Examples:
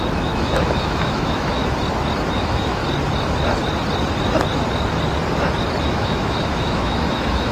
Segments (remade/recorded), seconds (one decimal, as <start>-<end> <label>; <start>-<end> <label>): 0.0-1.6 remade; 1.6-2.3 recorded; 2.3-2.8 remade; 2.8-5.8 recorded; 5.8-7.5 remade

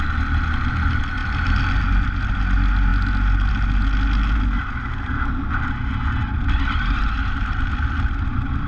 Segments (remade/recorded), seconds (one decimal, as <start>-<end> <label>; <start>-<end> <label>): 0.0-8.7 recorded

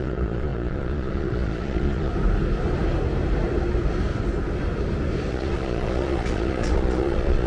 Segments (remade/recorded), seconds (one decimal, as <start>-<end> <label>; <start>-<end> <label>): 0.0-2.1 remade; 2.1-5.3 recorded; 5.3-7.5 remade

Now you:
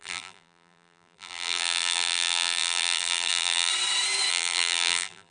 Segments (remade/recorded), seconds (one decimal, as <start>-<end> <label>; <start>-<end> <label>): 0.0-3.7 remade; 3.7-4.3 recorded; 4.3-5.3 remade

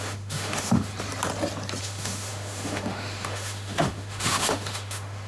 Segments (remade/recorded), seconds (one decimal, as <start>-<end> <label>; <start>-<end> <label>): 0.0-0.9 remade; 0.9-1.8 recorded; 1.8-5.3 remade

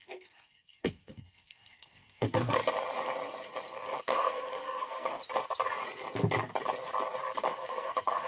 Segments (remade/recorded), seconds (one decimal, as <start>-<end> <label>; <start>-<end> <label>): 0.0-2.6 remade; 2.6-4.0 recorded; 4.0-5.2 remade; 5.2-7.5 recorded; 7.5-8.3 remade

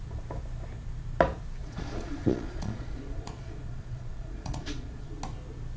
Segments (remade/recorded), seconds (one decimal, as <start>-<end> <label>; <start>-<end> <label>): 0.0-1.6 recorded; 1.6-5.1 remade; 5.1-5.8 recorded

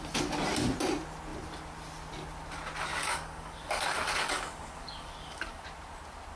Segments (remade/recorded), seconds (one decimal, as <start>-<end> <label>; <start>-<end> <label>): 0.0-2.9 recorded; 2.9-5.6 remade; 5.6-6.4 recorded